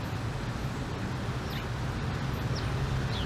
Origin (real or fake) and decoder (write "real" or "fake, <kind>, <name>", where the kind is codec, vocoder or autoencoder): real